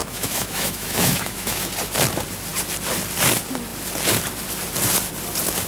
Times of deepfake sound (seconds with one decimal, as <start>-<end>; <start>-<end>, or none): 0.0-1.7